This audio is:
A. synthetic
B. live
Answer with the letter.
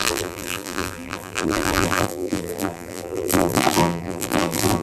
A